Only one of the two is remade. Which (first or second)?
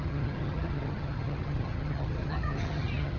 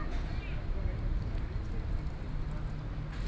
first